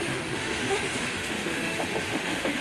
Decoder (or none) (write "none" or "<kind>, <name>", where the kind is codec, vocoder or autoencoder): autoencoder, DAC-VAE